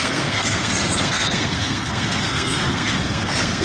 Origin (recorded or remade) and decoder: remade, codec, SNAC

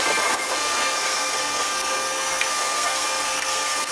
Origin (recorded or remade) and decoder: remade, codec, SNAC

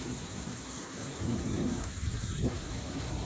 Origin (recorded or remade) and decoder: remade, codec, SNAC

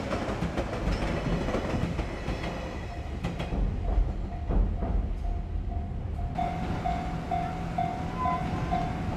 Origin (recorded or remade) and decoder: recorded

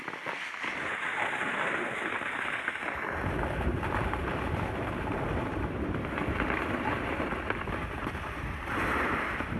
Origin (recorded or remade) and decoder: recorded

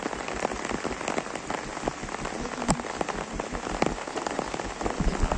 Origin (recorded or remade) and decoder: recorded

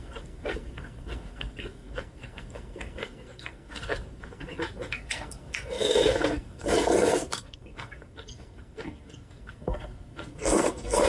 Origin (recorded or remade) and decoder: remade, codec, SNAC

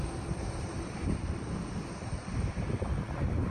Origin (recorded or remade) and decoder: recorded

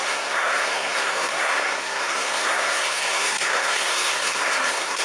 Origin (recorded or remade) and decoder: remade, codec, SNAC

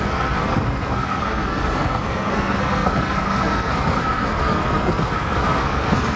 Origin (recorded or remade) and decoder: remade, codec, SNAC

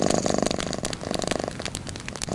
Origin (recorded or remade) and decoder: recorded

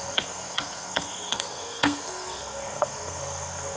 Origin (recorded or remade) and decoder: remade, codec, SNAC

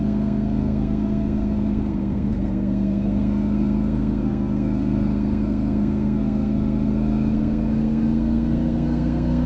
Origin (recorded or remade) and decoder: remade, codec, SNAC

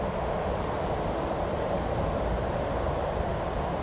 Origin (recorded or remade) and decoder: recorded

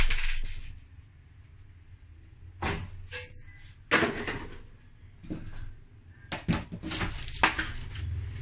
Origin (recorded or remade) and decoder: recorded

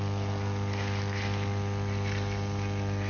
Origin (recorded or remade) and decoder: recorded